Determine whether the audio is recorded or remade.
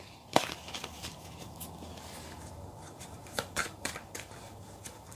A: remade